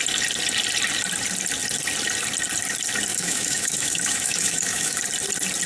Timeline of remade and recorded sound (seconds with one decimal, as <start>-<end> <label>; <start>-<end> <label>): 0.0-3.1 recorded; 3.1-5.0 remade; 5.0-5.7 recorded